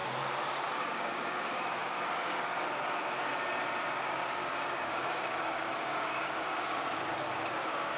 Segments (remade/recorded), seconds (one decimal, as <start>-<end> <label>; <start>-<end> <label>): 0.0-0.7 recorded; 0.7-3.3 remade; 3.3-3.9 recorded; 3.9-8.0 remade